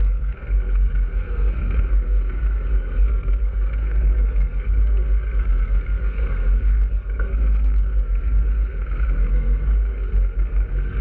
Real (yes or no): no